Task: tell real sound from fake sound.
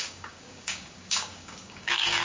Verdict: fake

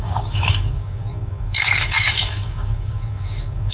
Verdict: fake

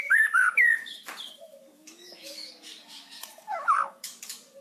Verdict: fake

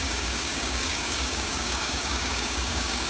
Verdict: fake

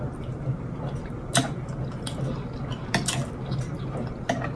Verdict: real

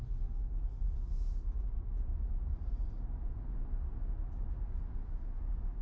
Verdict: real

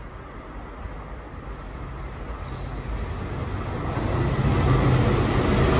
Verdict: real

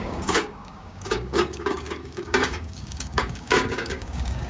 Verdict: fake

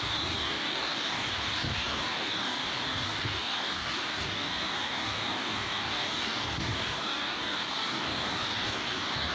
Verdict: fake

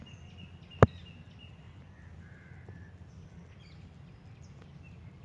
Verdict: real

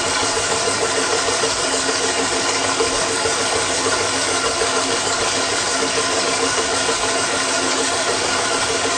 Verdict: fake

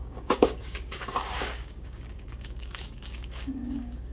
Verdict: fake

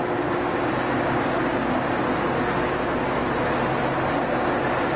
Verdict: real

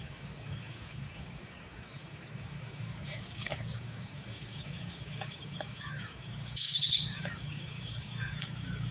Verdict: fake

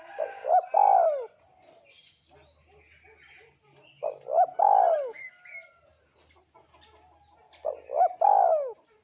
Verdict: real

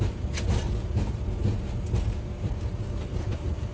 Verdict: real